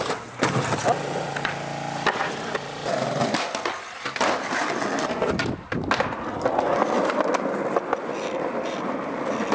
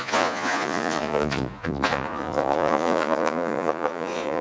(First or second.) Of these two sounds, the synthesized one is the second